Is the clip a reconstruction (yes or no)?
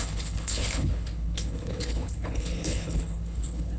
yes